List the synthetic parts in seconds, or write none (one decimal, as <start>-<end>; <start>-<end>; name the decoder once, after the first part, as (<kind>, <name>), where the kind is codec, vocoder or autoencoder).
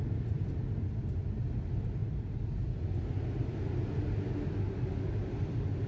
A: none